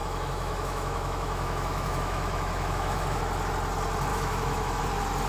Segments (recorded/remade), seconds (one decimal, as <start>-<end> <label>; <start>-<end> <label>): 0.0-3.2 remade; 3.2-4.1 recorded; 4.1-4.8 remade; 4.8-5.3 recorded